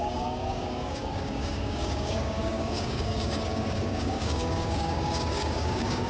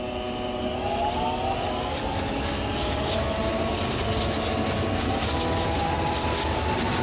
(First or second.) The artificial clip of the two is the first